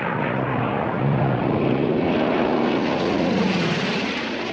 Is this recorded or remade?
remade